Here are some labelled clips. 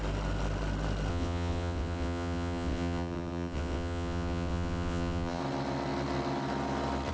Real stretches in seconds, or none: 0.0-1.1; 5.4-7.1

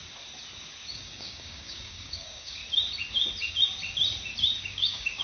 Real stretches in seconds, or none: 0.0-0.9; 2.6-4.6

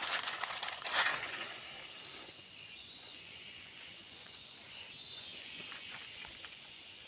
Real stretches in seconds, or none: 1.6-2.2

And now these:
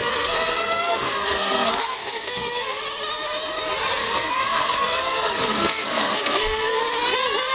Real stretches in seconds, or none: 2.8-4.0; 6.8-7.5

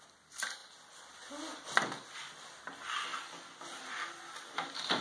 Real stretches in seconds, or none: 0.0-5.0

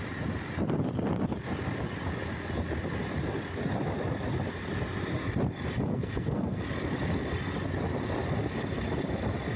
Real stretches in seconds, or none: 0.0-5.9; 6.6-9.6